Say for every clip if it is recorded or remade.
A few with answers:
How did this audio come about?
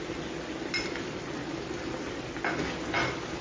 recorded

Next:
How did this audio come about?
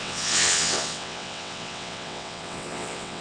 remade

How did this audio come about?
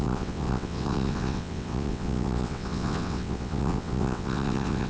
remade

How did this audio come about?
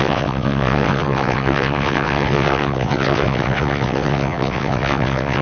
remade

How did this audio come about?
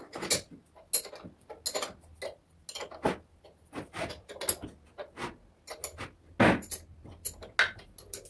recorded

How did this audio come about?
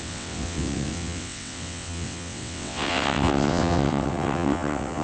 remade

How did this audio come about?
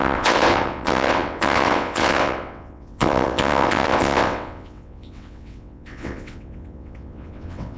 remade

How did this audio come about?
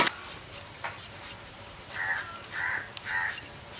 recorded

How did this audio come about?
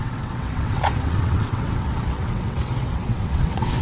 remade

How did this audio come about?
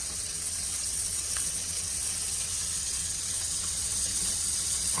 remade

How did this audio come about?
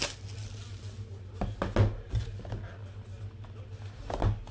recorded